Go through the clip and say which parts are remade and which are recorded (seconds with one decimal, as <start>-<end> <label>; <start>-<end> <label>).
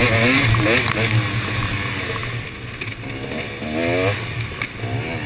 0.0-5.3 recorded